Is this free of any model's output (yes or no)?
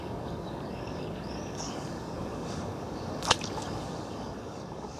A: no